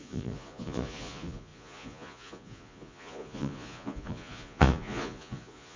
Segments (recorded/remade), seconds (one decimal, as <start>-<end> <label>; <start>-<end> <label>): 0.0-5.8 remade